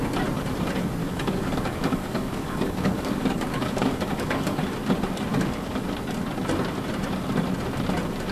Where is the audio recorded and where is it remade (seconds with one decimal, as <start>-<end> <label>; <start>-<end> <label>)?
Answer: 0.0-1.0 recorded; 1.0-4.6 remade; 4.6-5.3 recorded; 5.3-5.8 remade; 5.8-8.3 recorded